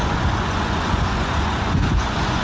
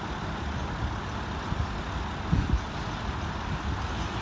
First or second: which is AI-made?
first